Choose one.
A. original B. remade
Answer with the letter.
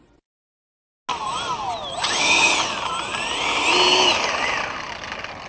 A